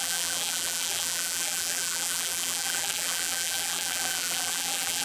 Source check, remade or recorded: remade